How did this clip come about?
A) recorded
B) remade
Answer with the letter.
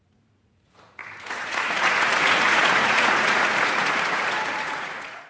B